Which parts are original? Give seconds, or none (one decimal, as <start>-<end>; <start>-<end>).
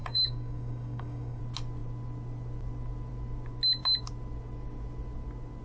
1.4-5.6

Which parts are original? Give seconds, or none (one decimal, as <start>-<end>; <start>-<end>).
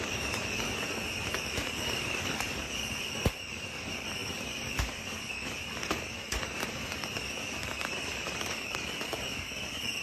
none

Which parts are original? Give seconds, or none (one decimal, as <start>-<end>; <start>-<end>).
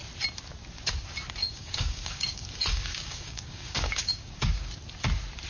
0.0-1.4; 4.7-5.5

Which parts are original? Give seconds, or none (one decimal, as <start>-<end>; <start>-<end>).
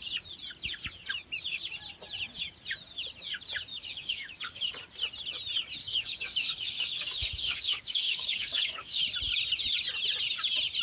0.0-3.7; 4.7-5.8; 9.0-10.8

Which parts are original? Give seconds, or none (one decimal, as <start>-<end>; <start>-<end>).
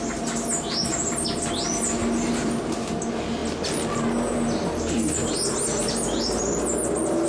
0.0-7.3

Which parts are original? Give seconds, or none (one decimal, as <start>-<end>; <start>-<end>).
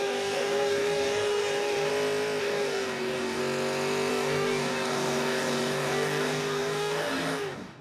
1.9-2.4; 3.4-4.1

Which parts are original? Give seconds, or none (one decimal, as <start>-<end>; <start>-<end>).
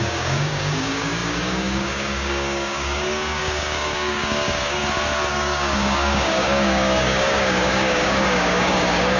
4.8-5.3